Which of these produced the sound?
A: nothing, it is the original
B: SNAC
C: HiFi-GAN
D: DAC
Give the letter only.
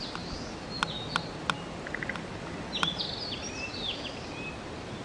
A